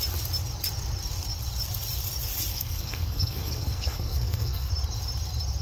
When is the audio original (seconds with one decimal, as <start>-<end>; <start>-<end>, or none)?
0.0-2.5; 4.7-5.6